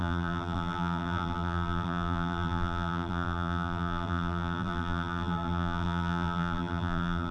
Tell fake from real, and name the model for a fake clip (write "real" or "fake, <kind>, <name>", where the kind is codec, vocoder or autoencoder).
fake, vocoder, BigVGAN v2